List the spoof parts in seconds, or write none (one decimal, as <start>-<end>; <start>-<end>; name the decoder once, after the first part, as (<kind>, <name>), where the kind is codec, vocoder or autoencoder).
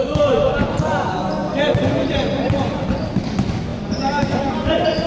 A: none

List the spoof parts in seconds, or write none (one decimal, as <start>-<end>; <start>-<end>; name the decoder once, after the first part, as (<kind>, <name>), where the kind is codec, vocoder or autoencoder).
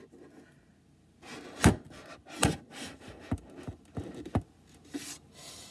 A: none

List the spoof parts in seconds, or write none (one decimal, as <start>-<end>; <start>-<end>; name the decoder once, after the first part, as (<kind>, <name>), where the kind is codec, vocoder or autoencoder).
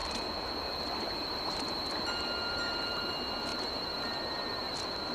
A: none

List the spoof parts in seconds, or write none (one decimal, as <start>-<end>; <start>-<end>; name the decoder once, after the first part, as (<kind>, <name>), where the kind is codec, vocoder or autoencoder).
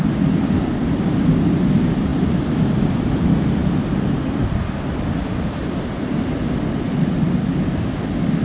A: none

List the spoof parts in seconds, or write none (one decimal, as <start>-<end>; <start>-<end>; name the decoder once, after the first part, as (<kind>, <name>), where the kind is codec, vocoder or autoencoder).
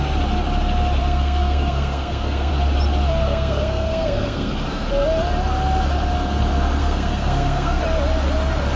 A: 1.0-2.5 (codec, SNAC); 3.2-4.9; 6.8-7.8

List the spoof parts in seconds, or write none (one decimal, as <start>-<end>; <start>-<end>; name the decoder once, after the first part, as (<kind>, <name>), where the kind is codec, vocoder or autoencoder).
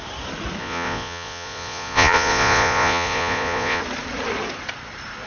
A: 0.6-3.8 (vocoder, Vocos)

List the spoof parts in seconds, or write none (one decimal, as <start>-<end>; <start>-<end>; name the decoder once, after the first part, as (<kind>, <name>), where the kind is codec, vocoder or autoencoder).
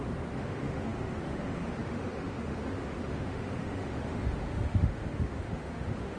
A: 0.0-6.2 (autoencoder, DAC-VAE)